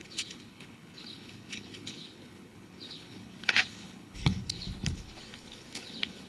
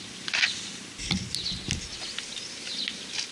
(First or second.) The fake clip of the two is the first